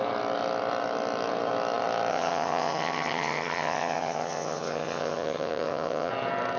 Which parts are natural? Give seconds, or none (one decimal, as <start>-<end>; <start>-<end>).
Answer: 0.0-2.1; 6.1-6.6